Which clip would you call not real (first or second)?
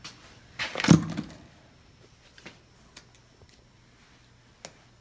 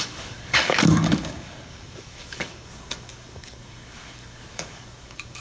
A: second